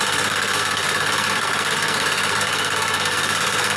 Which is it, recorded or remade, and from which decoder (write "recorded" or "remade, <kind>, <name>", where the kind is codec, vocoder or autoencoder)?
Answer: remade, codec, SNAC